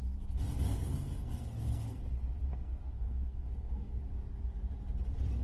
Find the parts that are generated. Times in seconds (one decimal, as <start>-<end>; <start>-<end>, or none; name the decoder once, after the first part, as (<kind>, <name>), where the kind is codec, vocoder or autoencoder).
0.7-2.0 (codec, SNAC); 2.5-4.0